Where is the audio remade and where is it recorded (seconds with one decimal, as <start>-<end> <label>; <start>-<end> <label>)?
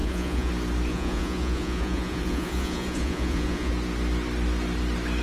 0.0-0.5 remade; 0.5-0.9 recorded; 0.9-3.7 remade; 3.7-5.2 recorded